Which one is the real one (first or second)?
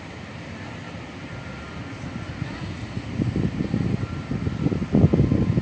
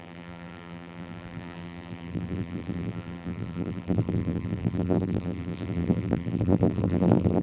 first